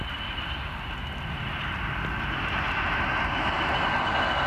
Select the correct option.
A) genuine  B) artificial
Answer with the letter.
A